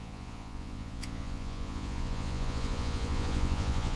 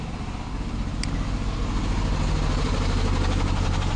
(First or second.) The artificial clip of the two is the first